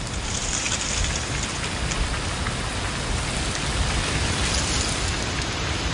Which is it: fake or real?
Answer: real